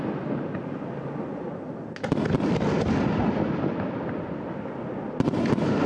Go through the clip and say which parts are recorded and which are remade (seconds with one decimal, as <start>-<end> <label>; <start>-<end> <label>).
0.0-5.9 recorded